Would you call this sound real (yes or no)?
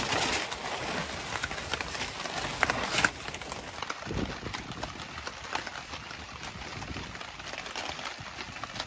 yes